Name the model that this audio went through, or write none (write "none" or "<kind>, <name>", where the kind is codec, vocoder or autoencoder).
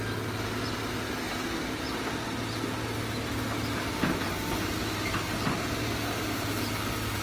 none